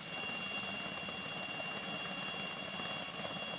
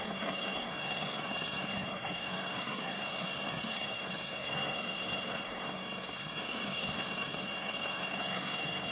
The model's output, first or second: second